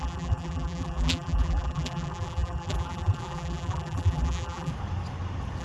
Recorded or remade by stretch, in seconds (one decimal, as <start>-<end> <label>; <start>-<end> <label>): 0.0-4.7 remade; 4.7-5.6 recorded